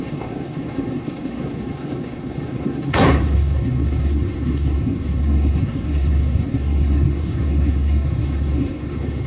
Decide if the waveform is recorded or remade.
remade